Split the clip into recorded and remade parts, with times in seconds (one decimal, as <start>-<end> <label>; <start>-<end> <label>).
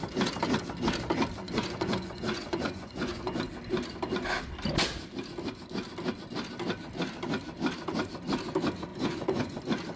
0.0-1.4 recorded; 1.4-3.5 remade; 3.5-8.9 recorded; 8.9-9.6 remade; 9.6-10.0 recorded